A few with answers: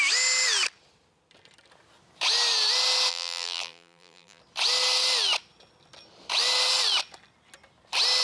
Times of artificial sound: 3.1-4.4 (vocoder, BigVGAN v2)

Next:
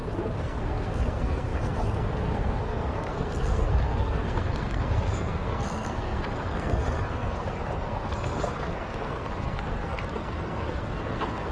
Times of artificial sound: 0.0-11.5 (codec, SNAC)

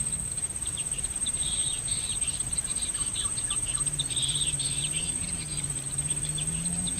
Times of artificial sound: 0.0-7.0 (vocoder, BigVGAN v2)

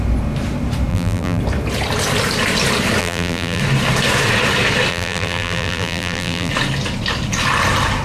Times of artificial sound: 0.9-1.4 (vocoder, BigVGAN v2); 3.0-3.6; 4.9-6.5

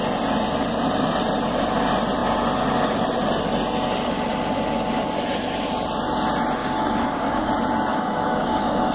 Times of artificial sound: 6.6-7.5 (codec, DAC); 7.9-8.9

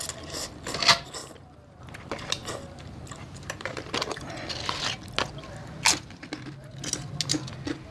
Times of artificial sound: 2.4-5.0 (vocoder, BigVGAN v2)

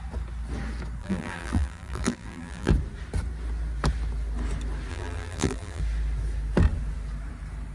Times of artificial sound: 1.0-2.7 (vocoder, BigVGAN v2); 4.9-5.8